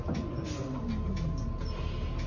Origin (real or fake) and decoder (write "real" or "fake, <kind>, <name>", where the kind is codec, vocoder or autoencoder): real